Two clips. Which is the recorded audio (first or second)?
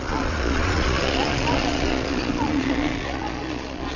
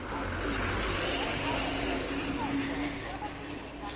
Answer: second